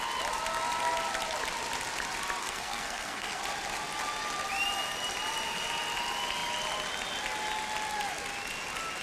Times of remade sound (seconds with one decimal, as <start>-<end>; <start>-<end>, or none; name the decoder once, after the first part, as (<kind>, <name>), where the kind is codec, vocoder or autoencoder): 2.4-3.4 (codec, SNAC)